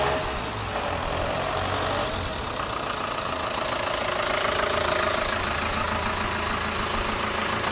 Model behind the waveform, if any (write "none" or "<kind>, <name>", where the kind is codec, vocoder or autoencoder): vocoder, BigVGAN v2